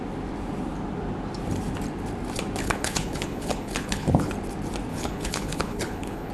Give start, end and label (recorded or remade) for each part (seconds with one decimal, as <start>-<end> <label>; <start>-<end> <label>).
0.0-2.6 recorded; 2.6-4.3 remade; 4.3-4.9 recorded; 4.9-6.3 remade

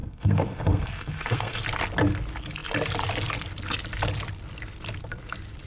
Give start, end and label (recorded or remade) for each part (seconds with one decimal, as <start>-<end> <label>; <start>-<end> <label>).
0.0-1.6 remade; 1.6-5.7 recorded

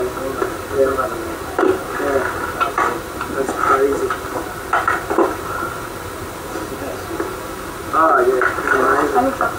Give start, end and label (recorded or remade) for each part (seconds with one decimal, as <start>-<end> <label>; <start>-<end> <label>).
0.0-9.6 recorded

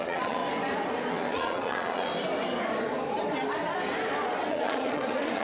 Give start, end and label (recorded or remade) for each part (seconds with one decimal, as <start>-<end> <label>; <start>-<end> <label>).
0.0-0.4 remade; 0.4-1.1 recorded; 1.1-2.1 remade; 2.1-4.5 recorded; 4.5-5.4 remade

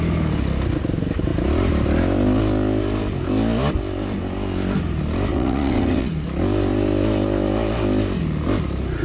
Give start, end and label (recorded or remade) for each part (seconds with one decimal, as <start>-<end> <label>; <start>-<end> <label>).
0.0-5.3 recorded; 5.3-6.1 remade; 6.1-9.0 recorded

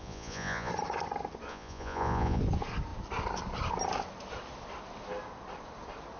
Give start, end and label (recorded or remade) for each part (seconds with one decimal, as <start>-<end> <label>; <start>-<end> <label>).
0.0-0.7 remade; 0.7-1.5 recorded; 1.5-2.4 remade; 2.4-6.2 recorded

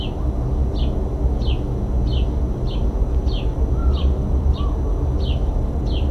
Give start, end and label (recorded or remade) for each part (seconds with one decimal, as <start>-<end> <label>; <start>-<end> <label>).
0.0-3.8 recorded; 3.8-4.6 remade; 4.6-6.1 recorded